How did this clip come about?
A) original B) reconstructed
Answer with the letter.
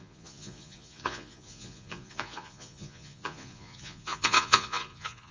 B